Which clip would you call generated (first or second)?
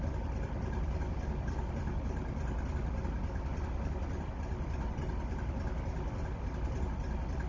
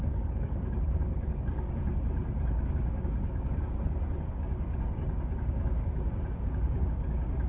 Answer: second